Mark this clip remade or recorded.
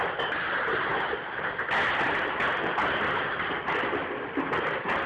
recorded